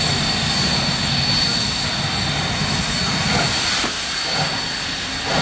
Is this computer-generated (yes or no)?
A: no